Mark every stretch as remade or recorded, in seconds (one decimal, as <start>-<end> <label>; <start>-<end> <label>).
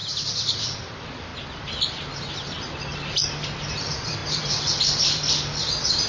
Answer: 0.0-0.6 recorded; 0.6-1.3 remade; 1.3-3.6 recorded; 3.6-6.1 remade